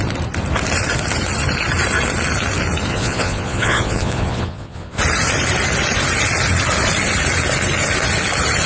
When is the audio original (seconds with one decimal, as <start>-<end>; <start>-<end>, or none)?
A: 0.0-2.9; 5.0-8.7